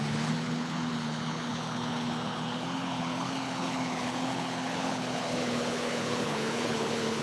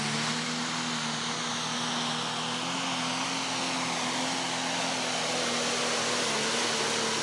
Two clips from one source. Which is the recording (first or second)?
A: second